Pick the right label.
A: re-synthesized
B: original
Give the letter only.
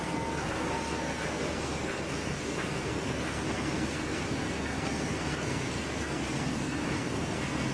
A